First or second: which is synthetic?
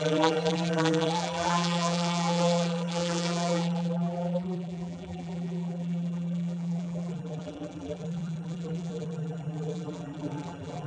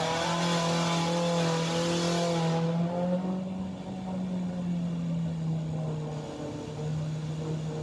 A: first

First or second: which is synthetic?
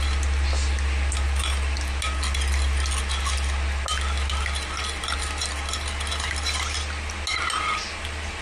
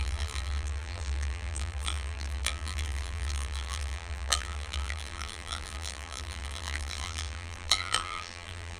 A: second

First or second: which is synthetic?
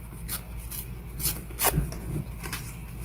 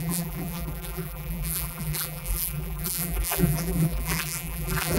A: second